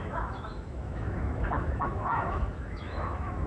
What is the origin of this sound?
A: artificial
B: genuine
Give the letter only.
A